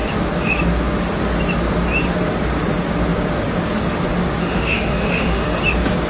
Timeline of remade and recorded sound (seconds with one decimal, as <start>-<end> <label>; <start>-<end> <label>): 0.0-4.4 recorded; 4.4-5.6 remade; 5.6-6.1 recorded

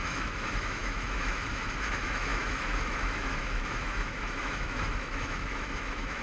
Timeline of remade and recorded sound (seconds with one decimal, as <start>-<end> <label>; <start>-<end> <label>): 0.0-6.2 remade

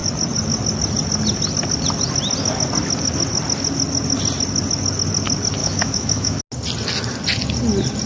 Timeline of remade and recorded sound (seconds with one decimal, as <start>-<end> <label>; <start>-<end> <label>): 0.0-5.6 recorded; 5.6-6.4 remade; 6.4-8.1 recorded

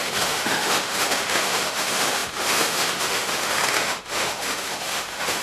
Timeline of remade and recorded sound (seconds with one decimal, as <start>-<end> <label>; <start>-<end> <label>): 0.0-5.4 remade

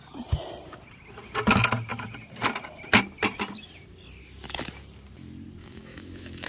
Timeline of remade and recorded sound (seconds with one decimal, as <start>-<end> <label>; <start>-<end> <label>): 0.0-5.6 recorded; 5.6-6.5 remade

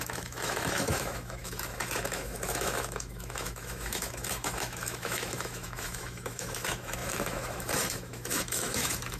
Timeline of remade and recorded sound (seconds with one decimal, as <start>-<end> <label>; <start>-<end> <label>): 0.0-9.2 remade

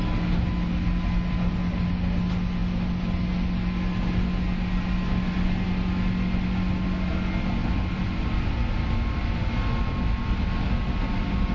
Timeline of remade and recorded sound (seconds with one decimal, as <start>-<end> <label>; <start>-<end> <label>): 0.0-11.5 recorded

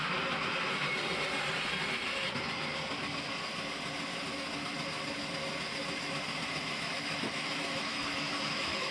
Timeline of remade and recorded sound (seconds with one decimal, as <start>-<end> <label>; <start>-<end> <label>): 0.0-6.9 recorded; 6.9-8.9 remade